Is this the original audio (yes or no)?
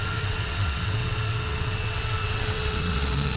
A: no